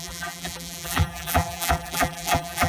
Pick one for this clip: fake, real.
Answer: fake